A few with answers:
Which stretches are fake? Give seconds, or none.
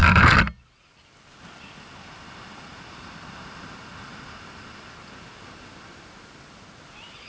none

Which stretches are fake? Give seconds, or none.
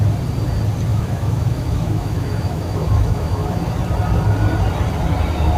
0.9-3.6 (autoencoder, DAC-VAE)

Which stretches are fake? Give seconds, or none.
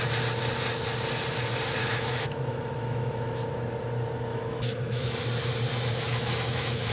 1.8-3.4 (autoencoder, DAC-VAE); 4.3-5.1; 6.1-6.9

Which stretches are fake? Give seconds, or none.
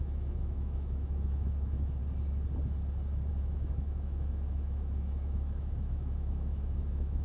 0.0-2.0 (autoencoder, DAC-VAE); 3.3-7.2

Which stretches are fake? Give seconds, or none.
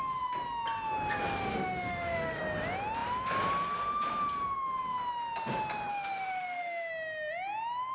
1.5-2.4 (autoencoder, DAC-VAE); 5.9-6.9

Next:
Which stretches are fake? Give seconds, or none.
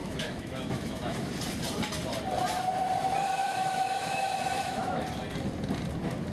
0.0-1.3 (autoencoder, DAC-VAE); 3.4-5.0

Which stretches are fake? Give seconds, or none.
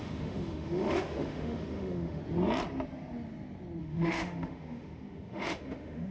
0.0-2.2 (autoencoder, DAC-VAE); 3.8-6.1